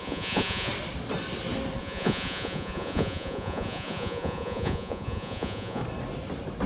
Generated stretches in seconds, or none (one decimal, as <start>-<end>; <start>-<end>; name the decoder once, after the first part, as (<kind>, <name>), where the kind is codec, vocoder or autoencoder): 0.0-0.7 (vocoder, Vocos); 1.8-5.8